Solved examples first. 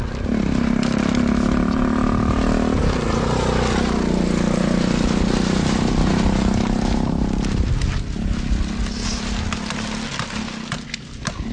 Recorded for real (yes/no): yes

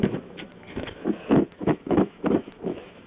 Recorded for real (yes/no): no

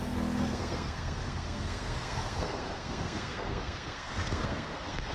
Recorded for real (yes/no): no